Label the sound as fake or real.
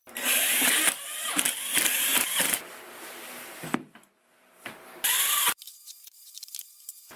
fake